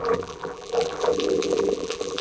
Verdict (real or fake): fake